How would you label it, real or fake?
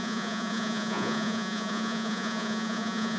fake